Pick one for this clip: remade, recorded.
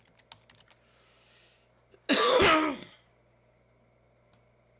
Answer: recorded